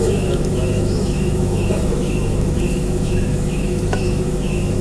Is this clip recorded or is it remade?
remade